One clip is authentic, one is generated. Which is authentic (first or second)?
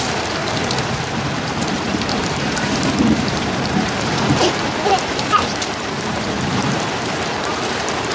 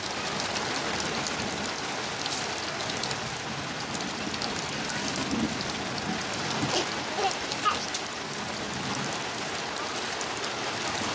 second